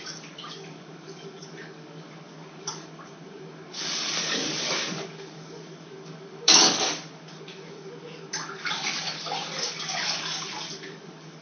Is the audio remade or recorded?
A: remade